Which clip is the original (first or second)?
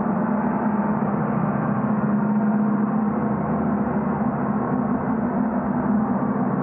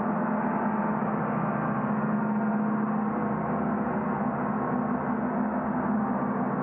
second